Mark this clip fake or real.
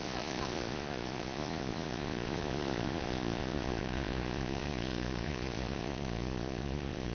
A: fake